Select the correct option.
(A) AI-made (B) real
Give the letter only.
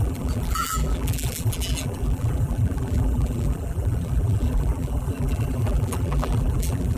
A